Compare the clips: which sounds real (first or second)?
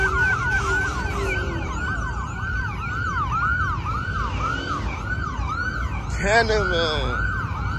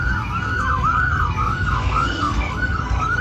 first